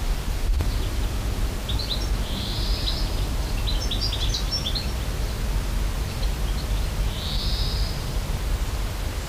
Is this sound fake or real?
real